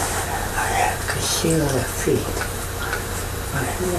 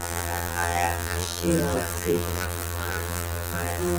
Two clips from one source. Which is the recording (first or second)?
first